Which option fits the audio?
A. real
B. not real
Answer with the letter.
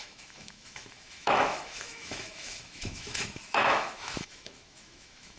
B